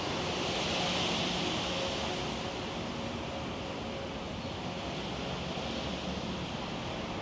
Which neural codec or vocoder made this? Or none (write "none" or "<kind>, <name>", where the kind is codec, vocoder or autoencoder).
none